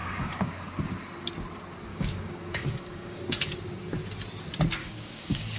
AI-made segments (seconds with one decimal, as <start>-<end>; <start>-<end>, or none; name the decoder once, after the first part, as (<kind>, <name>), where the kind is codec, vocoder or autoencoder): 0.0-0.7 (codec, DAC); 1.9-3.2; 4.8-5.6